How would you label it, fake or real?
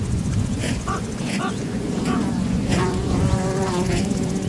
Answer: fake